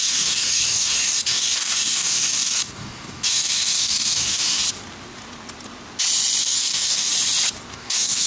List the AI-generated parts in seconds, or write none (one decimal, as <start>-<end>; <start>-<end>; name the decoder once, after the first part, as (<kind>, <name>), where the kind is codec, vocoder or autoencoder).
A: 0.0-4.6 (codec, DAC); 6.4-7.1; 7.7-8.3